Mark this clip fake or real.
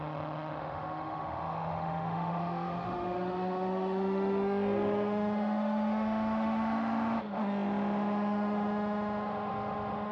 fake